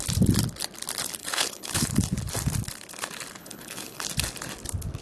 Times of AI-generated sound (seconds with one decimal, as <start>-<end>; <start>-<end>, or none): 1.2-1.9; 3.4-4.0